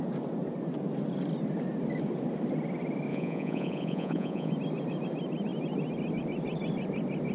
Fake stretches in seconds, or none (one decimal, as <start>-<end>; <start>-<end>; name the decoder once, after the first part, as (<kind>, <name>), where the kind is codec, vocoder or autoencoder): 3.1-4.5 (vocoder, Vocos)